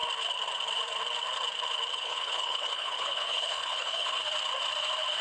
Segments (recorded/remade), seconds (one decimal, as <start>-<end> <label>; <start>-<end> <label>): 0.0-1.9 recorded; 1.9-4.2 remade; 4.2-5.2 recorded